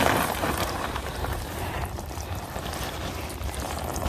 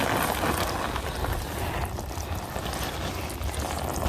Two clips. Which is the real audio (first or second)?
second